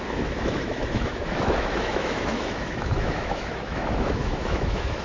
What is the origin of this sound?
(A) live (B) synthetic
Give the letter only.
B